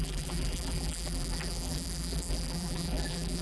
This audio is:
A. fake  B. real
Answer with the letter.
A